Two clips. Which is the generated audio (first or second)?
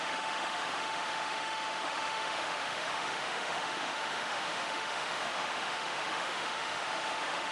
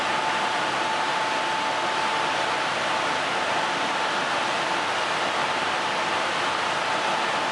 first